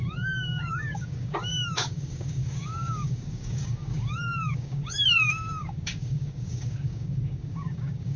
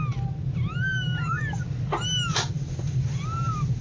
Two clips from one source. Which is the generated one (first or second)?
first